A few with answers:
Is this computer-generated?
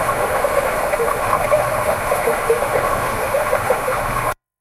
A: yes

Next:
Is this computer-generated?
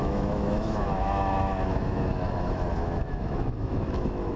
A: yes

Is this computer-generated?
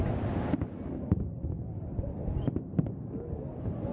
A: no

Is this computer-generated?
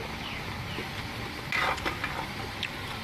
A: no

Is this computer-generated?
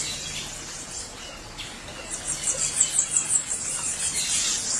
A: no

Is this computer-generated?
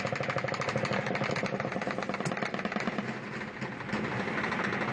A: no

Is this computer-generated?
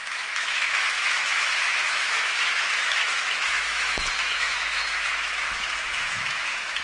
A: yes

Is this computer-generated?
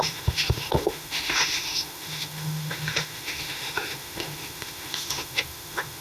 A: yes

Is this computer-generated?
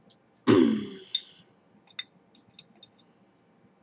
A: no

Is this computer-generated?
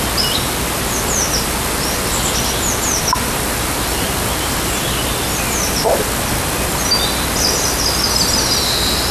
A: no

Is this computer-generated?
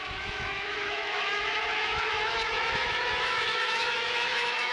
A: yes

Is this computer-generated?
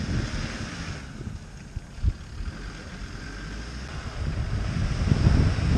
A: no